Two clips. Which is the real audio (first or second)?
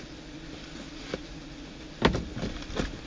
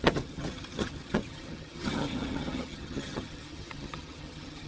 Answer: first